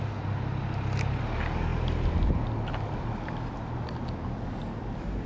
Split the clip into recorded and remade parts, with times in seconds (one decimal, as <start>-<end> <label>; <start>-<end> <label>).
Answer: 0.0-5.3 recorded